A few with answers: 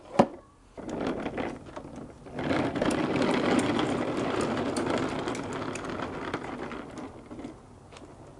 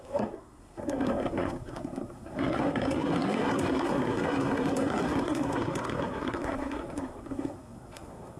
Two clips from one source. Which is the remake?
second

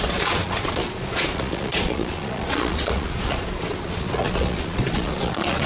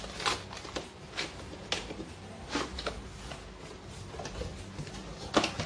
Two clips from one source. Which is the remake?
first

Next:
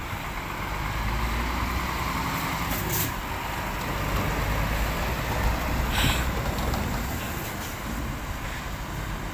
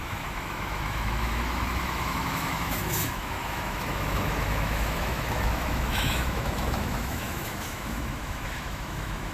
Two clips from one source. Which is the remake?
second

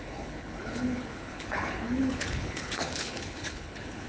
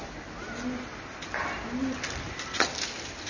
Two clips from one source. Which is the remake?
first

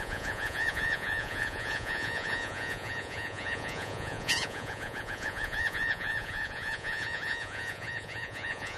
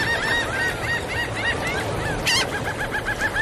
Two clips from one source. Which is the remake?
first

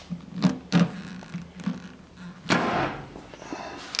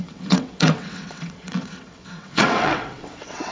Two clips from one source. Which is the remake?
second